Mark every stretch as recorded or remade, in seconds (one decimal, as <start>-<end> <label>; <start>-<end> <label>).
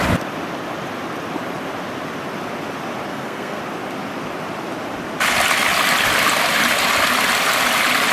0.0-3.1 recorded; 3.1-3.6 remade; 3.6-8.1 recorded